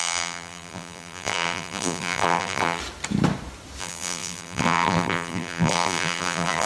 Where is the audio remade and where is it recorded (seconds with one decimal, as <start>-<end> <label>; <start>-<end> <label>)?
0.0-2.8 remade; 2.8-3.8 recorded; 3.8-6.7 remade